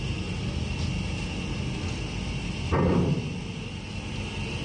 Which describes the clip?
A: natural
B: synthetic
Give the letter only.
A